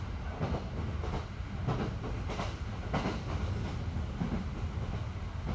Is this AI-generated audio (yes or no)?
no